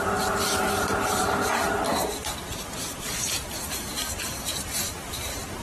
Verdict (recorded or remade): remade